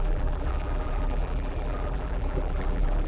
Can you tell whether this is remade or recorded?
remade